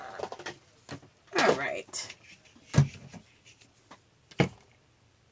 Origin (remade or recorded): recorded